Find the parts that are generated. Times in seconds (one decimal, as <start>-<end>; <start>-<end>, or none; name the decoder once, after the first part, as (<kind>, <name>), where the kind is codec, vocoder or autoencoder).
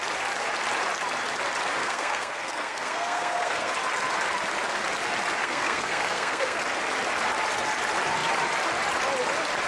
1.8-3.7 (codec, SNAC); 5.4-6.6